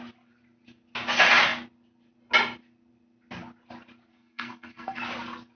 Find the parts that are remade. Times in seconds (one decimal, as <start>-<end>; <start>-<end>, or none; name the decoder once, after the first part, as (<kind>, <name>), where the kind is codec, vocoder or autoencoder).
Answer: 4.1-5.0 (codec, SNAC)